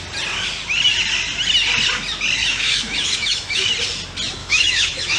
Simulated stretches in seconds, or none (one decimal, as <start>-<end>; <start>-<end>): 2.4-3.7; 4.4-5.2